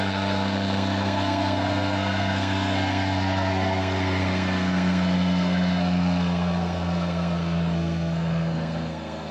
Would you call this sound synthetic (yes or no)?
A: yes